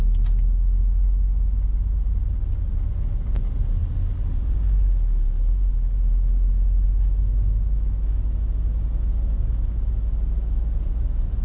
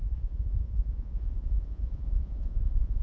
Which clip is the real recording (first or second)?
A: first